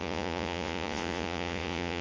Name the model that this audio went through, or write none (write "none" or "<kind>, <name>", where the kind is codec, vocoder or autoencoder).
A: vocoder, Vocos